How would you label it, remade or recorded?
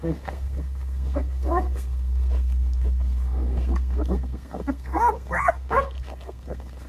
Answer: remade